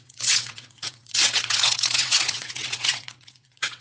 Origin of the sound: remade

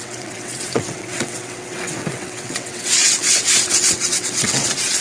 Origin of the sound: remade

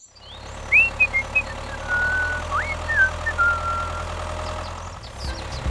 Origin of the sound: recorded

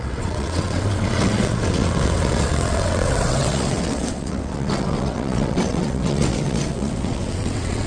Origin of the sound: remade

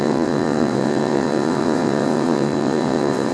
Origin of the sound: remade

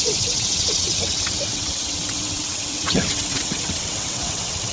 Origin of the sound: remade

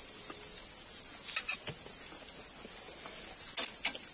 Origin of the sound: recorded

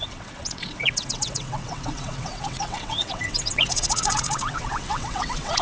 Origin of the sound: remade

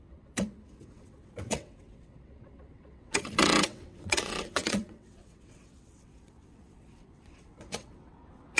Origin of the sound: remade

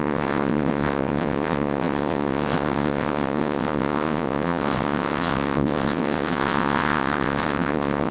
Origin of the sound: remade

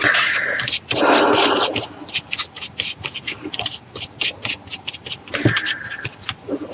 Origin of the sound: recorded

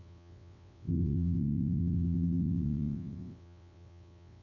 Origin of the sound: remade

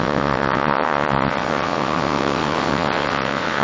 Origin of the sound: remade